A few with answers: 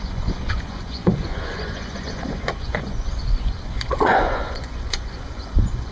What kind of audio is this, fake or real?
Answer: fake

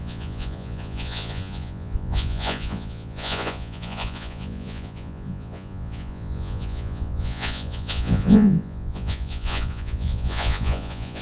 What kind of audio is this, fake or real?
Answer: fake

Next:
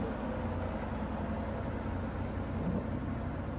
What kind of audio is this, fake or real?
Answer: real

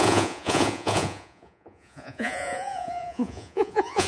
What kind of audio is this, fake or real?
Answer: fake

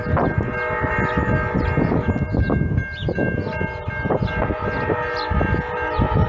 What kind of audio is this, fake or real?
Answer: real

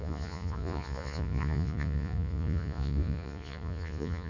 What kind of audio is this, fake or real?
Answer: fake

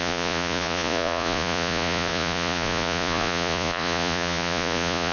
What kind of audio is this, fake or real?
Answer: fake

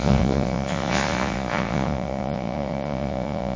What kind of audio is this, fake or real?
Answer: fake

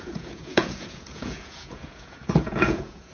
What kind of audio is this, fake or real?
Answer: fake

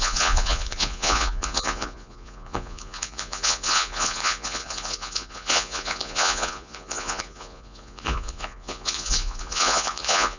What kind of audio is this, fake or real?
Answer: fake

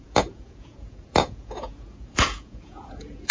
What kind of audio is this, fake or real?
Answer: fake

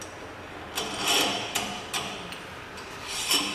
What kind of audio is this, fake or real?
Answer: real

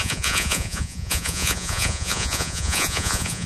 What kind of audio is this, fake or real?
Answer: fake